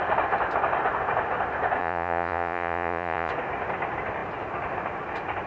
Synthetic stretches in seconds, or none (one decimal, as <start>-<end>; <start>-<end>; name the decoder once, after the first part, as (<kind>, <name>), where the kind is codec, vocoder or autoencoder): 1.8-3.3 (vocoder, Vocos)